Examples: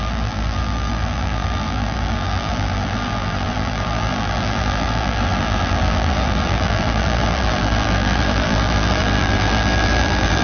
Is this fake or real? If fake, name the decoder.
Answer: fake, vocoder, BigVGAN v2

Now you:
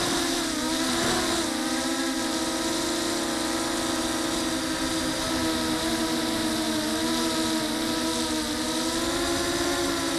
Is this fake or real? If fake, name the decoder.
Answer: real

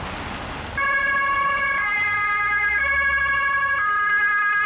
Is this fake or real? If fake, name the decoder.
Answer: real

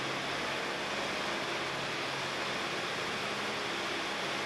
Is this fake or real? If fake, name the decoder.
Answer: real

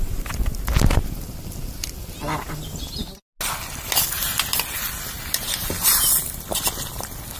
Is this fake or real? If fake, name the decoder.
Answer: real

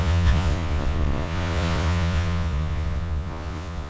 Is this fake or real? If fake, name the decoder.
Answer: fake, vocoder, Vocos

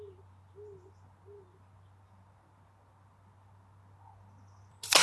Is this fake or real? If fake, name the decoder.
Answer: real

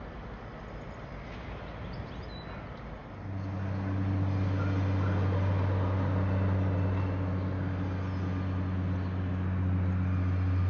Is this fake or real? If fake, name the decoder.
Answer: real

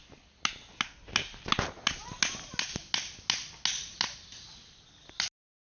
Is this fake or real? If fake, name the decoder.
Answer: real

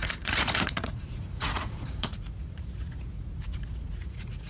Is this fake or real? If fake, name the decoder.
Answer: fake, vocoder, Vocos